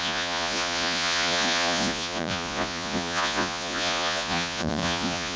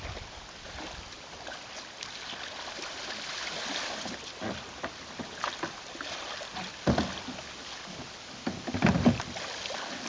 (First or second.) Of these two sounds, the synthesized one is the first